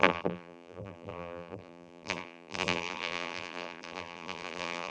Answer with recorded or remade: remade